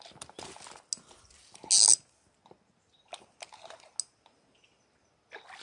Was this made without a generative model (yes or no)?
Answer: yes